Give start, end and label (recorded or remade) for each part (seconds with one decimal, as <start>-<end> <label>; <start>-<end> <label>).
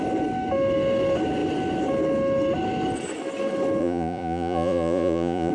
0.0-3.8 recorded; 3.8-5.5 remade